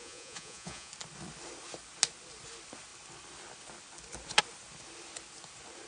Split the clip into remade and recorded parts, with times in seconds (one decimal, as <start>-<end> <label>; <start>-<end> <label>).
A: 0.0-0.9 remade; 0.9-5.9 recorded